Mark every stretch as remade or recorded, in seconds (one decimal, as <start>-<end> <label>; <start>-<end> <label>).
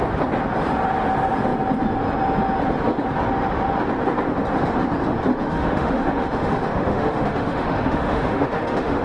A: 0.0-5.3 recorded; 5.3-9.0 remade